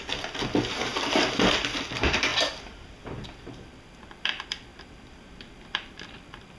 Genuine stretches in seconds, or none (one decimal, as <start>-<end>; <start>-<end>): 0.9-1.5; 2.3-3.0